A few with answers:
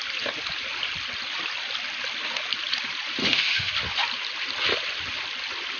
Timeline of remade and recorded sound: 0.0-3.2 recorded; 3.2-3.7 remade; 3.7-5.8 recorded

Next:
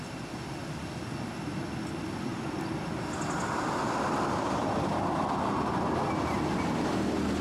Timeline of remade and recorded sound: 0.0-7.4 recorded

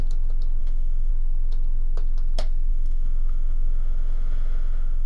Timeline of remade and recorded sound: 0.0-0.6 recorded; 0.6-1.1 remade; 1.1-2.7 recorded; 2.7-5.1 remade